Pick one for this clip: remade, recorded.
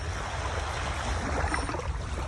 recorded